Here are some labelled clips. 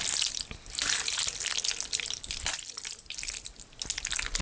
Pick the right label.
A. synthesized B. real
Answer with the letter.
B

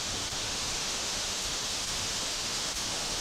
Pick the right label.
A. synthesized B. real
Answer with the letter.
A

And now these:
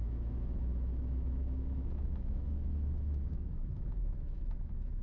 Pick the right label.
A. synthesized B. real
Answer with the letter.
A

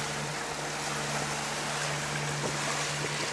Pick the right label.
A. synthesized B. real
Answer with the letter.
B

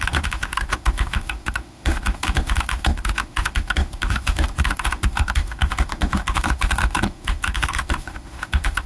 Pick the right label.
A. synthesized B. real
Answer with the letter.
A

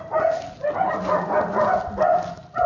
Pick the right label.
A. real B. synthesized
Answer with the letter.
A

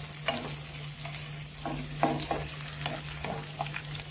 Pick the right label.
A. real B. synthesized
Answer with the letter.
A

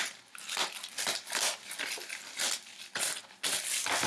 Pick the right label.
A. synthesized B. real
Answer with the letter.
B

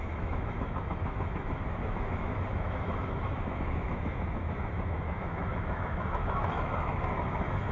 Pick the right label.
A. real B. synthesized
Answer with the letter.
B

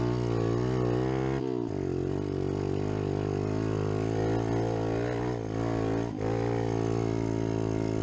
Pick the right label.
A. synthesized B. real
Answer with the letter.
B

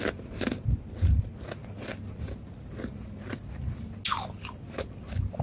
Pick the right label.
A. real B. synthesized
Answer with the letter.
A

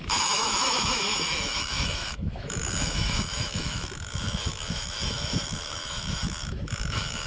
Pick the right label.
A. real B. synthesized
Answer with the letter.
B